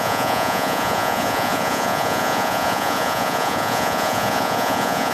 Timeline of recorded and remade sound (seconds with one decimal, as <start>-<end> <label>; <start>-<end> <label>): 0.0-5.1 remade